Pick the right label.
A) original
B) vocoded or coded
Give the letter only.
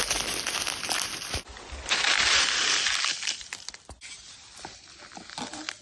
A